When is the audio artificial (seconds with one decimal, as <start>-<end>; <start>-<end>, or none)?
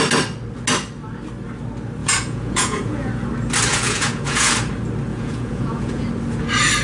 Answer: 2.0-3.1; 3.7-4.5; 5.1-6.1